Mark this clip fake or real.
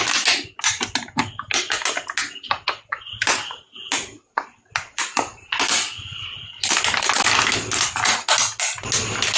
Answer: real